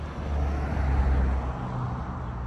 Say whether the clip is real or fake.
real